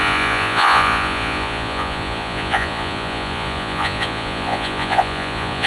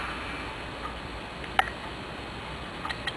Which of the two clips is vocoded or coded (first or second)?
first